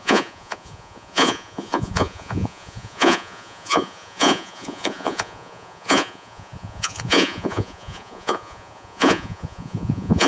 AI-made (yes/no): yes